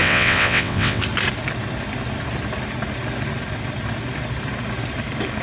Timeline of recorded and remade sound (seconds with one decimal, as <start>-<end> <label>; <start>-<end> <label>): 0.0-1.0 remade; 1.0-5.4 recorded